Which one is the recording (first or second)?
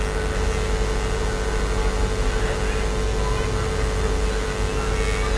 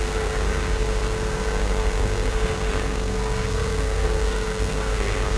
first